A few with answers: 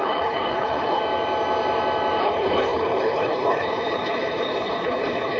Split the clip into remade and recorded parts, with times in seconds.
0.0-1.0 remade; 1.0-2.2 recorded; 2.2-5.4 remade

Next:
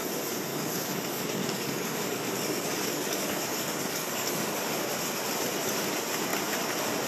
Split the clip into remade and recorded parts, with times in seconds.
0.0-0.5 recorded; 0.5-4.8 remade; 4.8-7.1 recorded

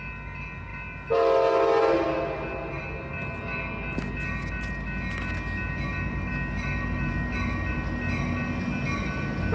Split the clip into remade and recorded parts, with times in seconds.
0.0-9.5 recorded

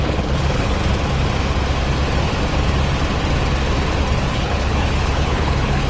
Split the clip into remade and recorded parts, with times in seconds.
0.0-0.8 remade; 0.8-4.3 recorded; 4.3-5.9 remade

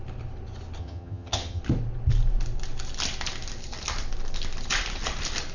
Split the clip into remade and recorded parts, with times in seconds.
0.0-0.8 recorded; 0.8-1.6 remade; 1.6-5.5 recorded

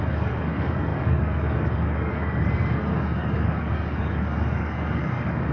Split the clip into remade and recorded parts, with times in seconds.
0.0-5.5 remade

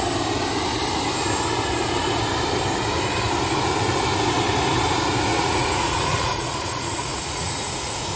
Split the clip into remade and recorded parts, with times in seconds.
0.0-5.3 recorded; 5.3-8.2 remade

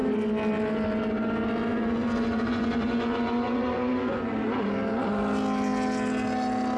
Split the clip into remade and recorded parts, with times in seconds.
0.0-1.7 recorded; 1.7-4.7 remade; 4.7-6.8 recorded